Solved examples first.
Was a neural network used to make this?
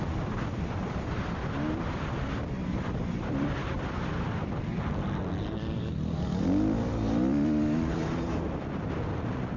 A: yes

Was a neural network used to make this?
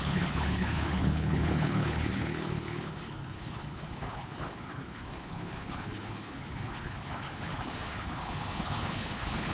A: yes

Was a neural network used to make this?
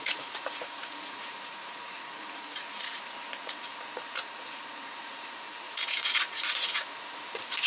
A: yes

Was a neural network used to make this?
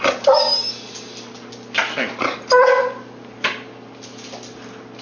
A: no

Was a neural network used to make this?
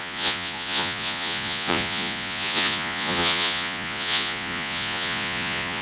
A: yes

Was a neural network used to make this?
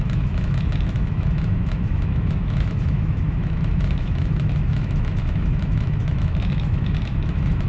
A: yes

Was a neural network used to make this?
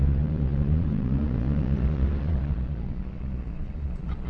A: yes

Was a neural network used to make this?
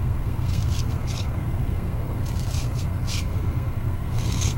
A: yes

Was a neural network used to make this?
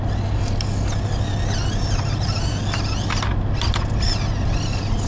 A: no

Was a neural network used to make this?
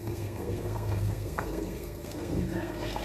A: yes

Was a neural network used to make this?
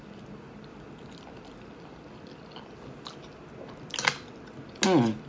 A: no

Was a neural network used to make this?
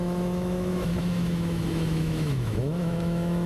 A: yes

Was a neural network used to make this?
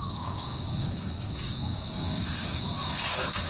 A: yes